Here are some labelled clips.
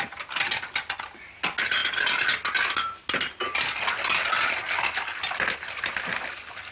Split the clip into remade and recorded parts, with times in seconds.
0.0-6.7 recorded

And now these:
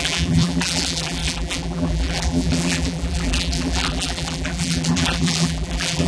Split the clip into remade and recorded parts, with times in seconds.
0.0-6.1 remade

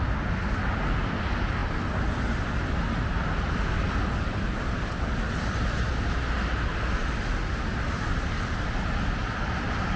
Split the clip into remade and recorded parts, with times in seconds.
0.0-10.0 recorded

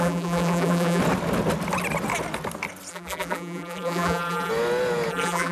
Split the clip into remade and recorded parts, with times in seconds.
0.0-1.0 remade; 1.0-2.9 recorded; 2.9-4.5 remade; 4.5-5.1 recorded; 5.1-5.5 remade